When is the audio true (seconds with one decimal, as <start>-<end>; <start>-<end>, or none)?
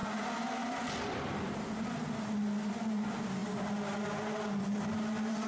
0.0-5.5